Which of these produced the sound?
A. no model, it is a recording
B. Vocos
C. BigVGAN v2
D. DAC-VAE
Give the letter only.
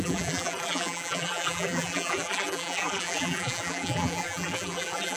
C